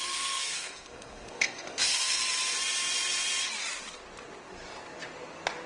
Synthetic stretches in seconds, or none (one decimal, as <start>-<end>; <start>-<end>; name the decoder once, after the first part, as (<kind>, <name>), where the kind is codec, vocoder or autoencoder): 0.0-2.2 (codec, SNAC)